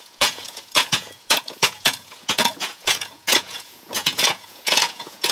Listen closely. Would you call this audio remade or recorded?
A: remade